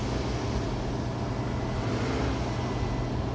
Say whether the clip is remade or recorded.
recorded